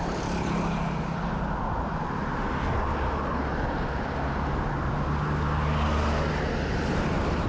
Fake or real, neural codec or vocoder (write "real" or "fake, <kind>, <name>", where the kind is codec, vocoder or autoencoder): real